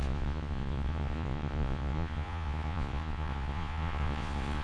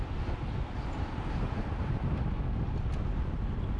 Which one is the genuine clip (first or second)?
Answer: second